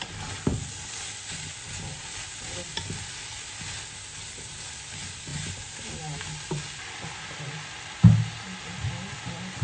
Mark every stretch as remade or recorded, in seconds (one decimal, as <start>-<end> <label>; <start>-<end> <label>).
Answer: 0.0-9.6 recorded